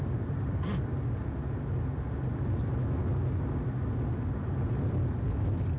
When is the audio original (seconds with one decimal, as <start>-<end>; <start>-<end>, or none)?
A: 0.9-4.4